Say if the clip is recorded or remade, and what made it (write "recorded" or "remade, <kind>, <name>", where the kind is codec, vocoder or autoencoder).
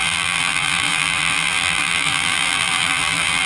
remade, vocoder, BigVGAN v2